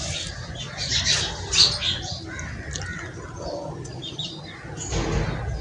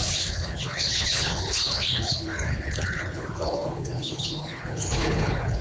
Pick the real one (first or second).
first